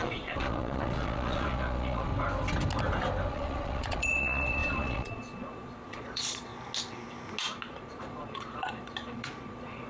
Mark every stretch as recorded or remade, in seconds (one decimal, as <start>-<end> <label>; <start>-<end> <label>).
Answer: 0.0-2.1 remade; 2.1-3.3 recorded; 3.3-6.5 remade; 6.5-7.7 recorded; 7.7-9.9 remade